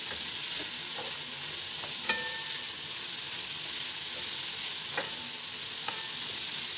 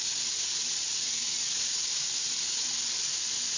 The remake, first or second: second